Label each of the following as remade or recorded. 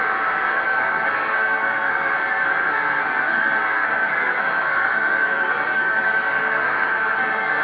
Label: remade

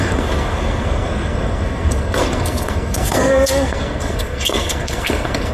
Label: remade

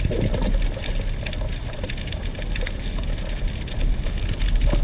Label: recorded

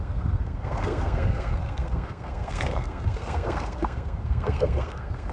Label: remade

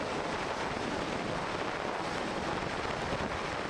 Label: recorded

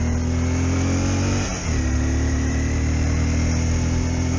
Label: recorded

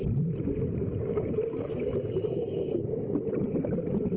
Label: remade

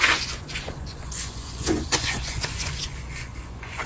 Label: remade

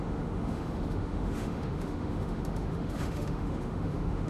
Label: remade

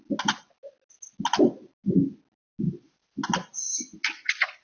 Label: recorded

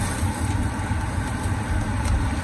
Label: recorded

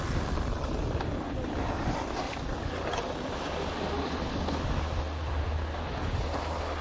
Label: recorded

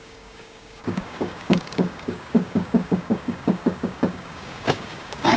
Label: remade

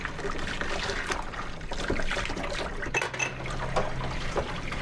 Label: recorded